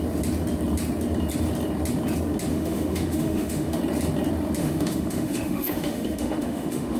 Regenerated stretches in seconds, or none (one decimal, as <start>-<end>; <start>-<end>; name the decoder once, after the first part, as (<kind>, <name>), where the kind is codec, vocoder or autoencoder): 2.5-3.8 (autoencoder, DAC-VAE); 4.6-7.0